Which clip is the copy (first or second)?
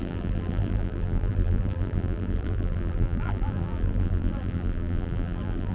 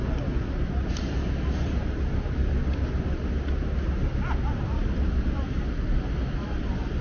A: first